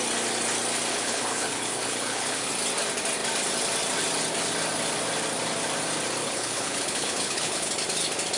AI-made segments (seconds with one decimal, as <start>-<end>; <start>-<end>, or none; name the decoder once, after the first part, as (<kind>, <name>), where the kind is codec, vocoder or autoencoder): 0.9-2.5 (codec, HILCodec); 6.2-7.7